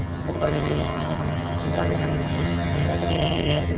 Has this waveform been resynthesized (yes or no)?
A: yes